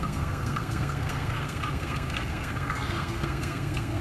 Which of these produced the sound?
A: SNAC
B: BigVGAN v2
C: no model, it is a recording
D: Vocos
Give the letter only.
A